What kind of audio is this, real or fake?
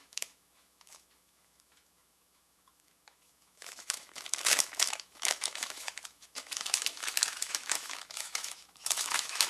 fake